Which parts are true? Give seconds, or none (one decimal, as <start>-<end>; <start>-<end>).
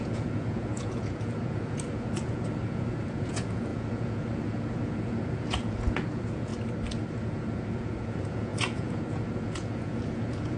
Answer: 6.5-7.1